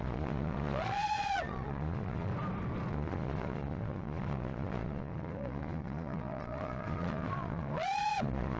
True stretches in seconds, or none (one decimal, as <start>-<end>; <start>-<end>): 2.3-2.9